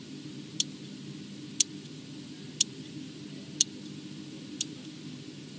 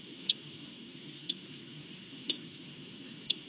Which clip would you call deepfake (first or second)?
second